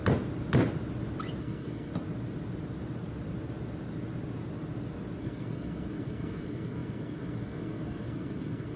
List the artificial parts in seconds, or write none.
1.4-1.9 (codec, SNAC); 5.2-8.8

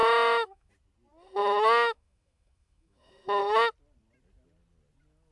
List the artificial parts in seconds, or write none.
0.0-0.7 (autoencoder, DAC-VAE); 1.4-3.4

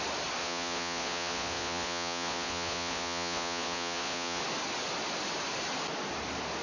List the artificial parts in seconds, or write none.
0.4-4.4 (vocoder, Vocos)

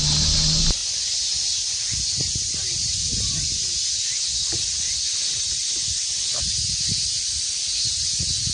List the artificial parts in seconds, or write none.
none

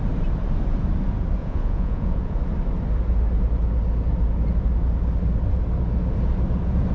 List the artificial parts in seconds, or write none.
1.4-2.4 (vocoder, Vocos)

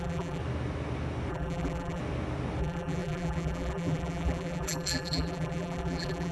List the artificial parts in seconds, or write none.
0.0-0.4 (vocoder, BigVGAN v2); 1.3-2.0; 2.6-6.3

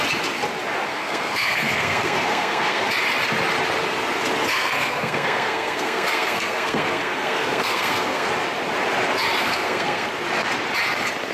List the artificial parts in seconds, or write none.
0.9-2.8 (codec, SNAC); 4.5-8.3; 9.4-10.1